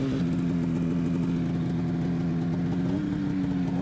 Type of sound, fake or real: real